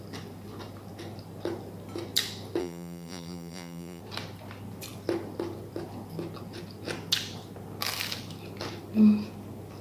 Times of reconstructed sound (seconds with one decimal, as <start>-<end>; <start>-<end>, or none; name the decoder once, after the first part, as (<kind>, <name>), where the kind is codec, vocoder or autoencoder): 2.6-4.0 (vocoder, BigVGAN v2)

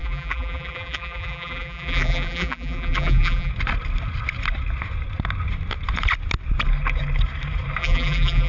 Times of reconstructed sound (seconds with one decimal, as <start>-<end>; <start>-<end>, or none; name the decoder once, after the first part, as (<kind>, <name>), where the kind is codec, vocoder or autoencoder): 0.0-3.5 (vocoder, BigVGAN v2); 7.8-8.5

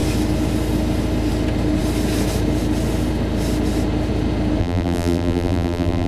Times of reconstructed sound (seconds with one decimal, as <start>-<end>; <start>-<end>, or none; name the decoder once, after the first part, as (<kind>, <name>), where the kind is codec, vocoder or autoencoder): 4.6-6.1 (vocoder, BigVGAN v2)